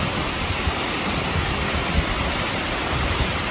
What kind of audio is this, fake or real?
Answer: real